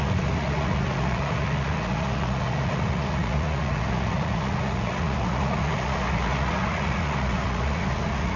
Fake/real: fake